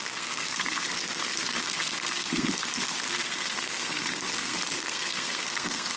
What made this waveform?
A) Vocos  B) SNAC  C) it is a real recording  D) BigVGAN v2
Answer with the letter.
B